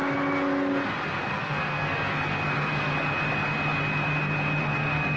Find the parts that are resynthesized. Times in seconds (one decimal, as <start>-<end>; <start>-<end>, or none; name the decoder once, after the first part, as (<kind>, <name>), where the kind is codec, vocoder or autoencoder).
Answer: 1.3-2.9 (codec, SNAC); 4.6-5.2

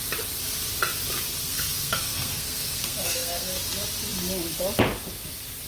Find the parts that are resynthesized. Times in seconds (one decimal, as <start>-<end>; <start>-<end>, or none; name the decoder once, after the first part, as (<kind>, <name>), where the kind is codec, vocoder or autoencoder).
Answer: 1.4-3.6 (codec, SNAC)

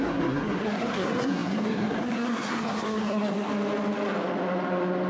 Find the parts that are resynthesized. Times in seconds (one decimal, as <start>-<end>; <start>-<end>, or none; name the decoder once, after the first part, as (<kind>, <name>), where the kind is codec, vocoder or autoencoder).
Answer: 0.0-3.5 (codec, SNAC)

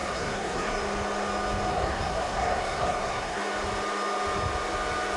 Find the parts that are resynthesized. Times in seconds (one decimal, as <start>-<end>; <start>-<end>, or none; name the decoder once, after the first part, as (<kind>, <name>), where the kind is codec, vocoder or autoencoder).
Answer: 0.0-0.8 (codec, SNAC); 1.7-3.4

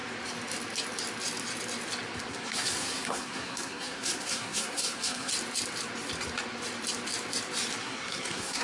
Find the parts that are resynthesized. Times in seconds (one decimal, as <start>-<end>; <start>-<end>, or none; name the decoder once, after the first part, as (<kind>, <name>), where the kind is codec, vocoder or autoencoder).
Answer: 2.3-5.3 (codec, SNAC); 7.8-8.6

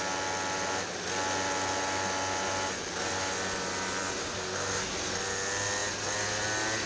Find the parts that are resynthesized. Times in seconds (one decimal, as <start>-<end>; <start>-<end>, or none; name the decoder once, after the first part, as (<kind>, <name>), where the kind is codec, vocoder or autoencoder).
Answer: 4.2-4.9 (codec, SNAC)

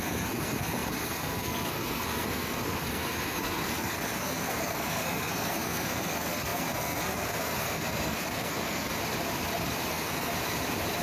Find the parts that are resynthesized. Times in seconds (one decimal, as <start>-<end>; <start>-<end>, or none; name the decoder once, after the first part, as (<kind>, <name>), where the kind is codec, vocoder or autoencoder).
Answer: 0.0-8.9 (codec, SNAC); 9.9-10.3